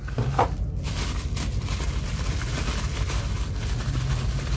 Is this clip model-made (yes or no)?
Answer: no